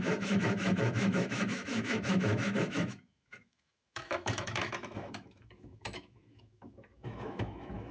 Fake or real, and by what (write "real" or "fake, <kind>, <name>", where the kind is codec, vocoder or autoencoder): fake, autoencoder, DAC-VAE